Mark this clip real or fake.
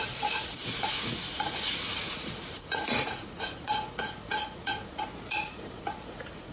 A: fake